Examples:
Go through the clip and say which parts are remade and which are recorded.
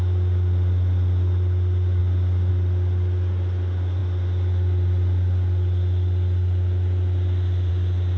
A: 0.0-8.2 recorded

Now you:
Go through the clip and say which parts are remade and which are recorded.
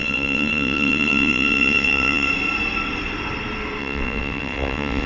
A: 0.0-2.3 remade; 2.3-3.8 recorded; 3.8-5.1 remade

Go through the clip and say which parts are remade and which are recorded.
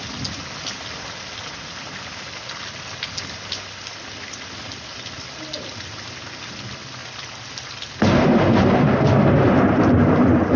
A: 0.0-10.6 recorded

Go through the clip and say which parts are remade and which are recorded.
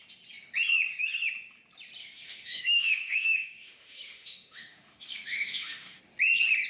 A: 0.0-2.0 recorded; 2.0-6.0 remade; 6.0-6.7 recorded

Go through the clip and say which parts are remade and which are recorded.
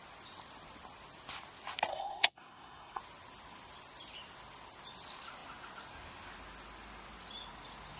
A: 0.0-1.9 recorded; 1.9-3.0 remade; 3.0-8.0 recorded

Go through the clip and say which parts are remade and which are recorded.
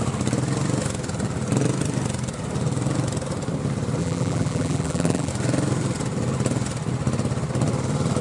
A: 0.0-4.0 recorded; 4.0-5.3 remade; 5.3-8.2 recorded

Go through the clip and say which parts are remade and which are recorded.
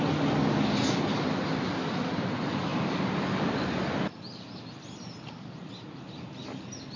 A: 0.0-7.0 recorded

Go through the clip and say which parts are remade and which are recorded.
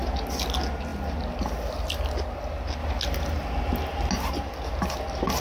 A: 0.0-5.4 recorded